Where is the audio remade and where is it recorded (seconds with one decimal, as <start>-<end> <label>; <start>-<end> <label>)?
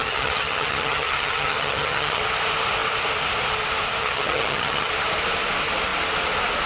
0.0-2.2 remade; 2.2-4.0 recorded; 4.0-4.9 remade; 4.9-6.7 recorded